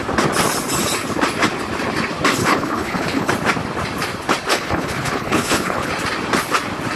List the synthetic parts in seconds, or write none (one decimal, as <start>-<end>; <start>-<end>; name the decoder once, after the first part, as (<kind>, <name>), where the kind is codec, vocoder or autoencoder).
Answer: 2.4-3.3 (codec, HILCodec); 4.5-5.9

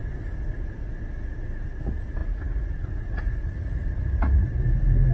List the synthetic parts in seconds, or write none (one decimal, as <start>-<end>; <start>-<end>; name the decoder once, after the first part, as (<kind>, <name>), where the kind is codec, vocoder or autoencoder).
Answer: 2.2-4.6 (vocoder, Vocos)

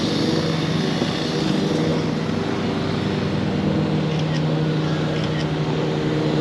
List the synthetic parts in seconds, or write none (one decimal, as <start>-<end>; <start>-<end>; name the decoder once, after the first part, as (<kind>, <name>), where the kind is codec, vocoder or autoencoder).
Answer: none